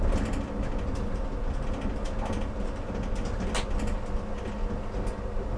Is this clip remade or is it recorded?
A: recorded